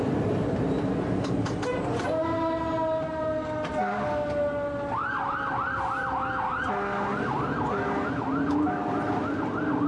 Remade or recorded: recorded